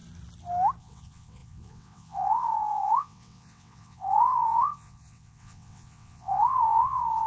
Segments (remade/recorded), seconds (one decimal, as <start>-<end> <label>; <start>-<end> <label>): 0.0-0.8 recorded; 0.8-7.3 remade